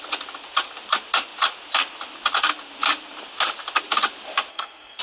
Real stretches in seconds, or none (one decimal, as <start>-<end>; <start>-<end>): 0.0-4.5